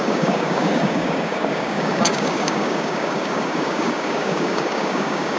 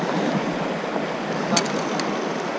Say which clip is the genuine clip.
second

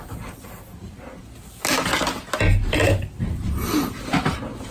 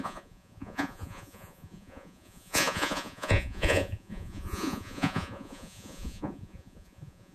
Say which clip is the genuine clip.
first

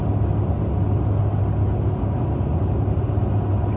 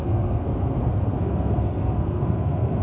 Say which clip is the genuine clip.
first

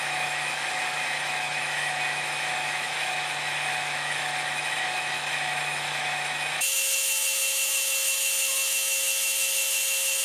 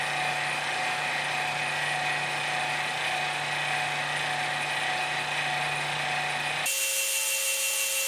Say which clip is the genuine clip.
second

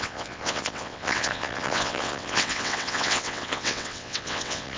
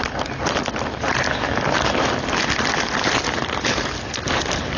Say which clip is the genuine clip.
second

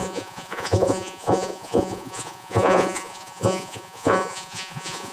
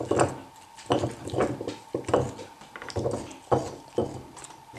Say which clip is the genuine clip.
second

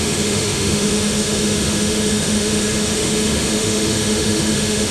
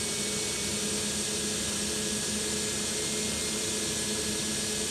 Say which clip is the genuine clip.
second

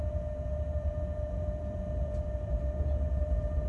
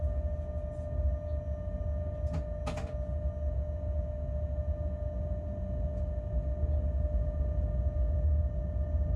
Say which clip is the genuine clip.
second